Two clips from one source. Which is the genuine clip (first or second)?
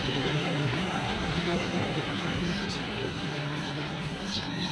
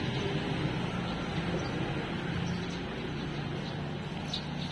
second